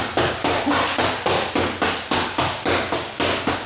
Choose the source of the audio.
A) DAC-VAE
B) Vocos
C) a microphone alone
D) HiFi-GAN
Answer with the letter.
C